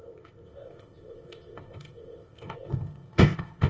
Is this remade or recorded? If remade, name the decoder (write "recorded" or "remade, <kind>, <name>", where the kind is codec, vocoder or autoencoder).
remade, codec, ZipCodec